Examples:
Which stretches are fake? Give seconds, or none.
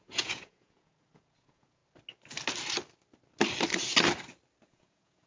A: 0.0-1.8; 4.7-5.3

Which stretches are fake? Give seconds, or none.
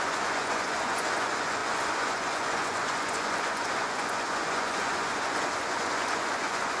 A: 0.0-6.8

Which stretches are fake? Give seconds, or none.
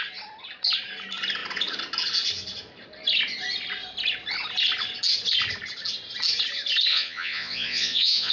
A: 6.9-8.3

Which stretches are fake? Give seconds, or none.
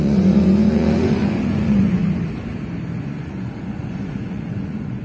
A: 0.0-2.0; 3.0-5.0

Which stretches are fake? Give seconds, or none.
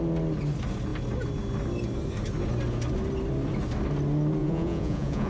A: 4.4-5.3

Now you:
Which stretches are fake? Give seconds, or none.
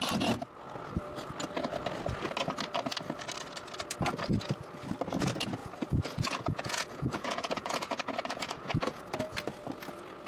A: 5.6-9.0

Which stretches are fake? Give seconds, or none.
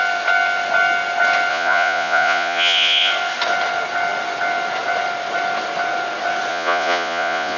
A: 1.5-3.1; 6.5-7.6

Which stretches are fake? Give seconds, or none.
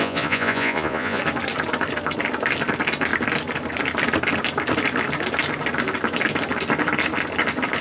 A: 0.0-1.2